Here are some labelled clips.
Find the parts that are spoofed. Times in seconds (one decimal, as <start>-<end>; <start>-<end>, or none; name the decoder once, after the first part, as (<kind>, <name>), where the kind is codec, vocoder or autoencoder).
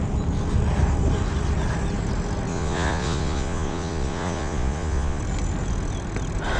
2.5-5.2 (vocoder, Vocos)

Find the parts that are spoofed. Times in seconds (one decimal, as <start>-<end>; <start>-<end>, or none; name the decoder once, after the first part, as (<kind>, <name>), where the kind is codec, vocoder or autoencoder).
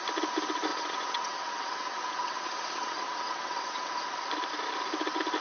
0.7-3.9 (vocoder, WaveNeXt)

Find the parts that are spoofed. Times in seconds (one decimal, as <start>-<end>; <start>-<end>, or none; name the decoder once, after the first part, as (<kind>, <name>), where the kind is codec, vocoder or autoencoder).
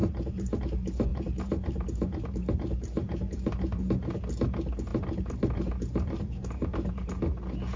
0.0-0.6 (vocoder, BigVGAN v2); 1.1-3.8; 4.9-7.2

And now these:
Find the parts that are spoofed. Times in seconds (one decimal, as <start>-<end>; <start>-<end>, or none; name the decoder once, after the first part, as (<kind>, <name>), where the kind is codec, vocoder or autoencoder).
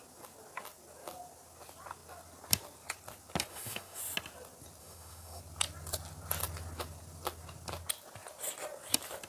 3.5-4.0 (autoencoder, DAC-VAE); 4.8-5.4